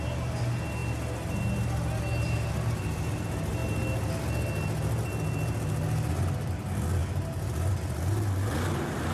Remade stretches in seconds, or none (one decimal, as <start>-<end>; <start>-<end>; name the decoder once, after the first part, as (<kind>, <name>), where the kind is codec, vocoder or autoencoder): none